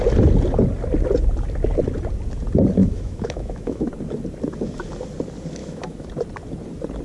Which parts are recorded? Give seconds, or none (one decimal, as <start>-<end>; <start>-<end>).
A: 0.0-2.8; 3.9-5.6; 6.1-7.0